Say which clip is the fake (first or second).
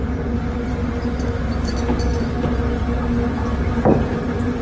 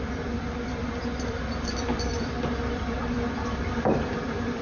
second